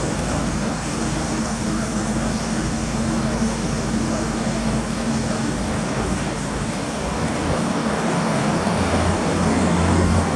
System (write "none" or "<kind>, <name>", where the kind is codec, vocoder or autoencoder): codec, DAC